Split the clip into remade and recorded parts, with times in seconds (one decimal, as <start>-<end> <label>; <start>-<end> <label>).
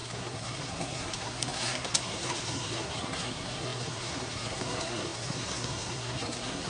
0.0-6.7 remade